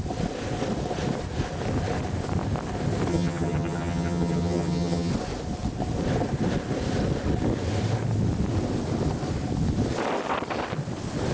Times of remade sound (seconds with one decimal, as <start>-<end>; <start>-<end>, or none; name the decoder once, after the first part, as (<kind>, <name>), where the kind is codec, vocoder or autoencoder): 3.1-5.1 (vocoder, HiFi-GAN)